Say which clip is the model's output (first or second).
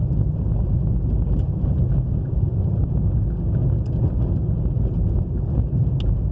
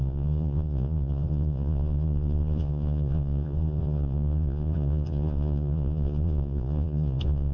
second